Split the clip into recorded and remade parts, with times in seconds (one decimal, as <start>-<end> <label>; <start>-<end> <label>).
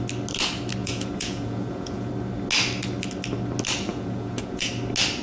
0.0-0.8 recorded; 0.8-2.1 remade; 2.1-3.9 recorded; 3.9-4.7 remade; 4.7-5.2 recorded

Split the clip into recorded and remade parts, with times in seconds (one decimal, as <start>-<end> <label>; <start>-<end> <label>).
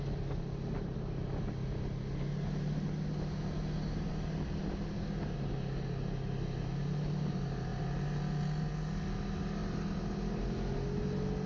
0.0-11.5 recorded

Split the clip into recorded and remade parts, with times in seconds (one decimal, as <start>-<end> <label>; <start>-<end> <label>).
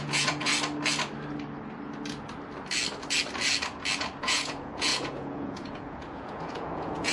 0.0-0.5 remade; 0.5-4.2 recorded; 4.2-7.1 remade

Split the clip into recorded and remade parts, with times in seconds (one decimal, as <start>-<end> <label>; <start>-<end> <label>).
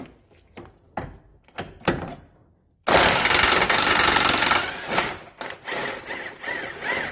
0.0-1.3 recorded; 1.3-2.0 remade; 2.0-2.4 recorded; 2.4-7.1 remade